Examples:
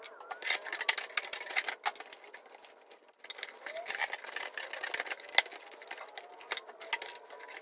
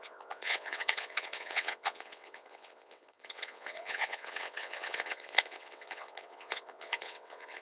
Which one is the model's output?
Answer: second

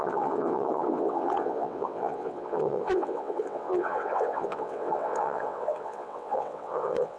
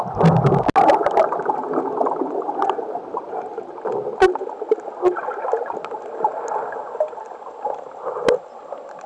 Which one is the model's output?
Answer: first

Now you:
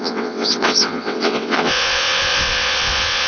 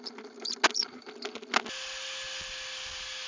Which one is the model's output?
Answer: first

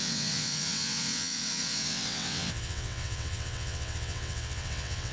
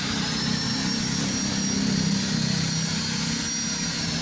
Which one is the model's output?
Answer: first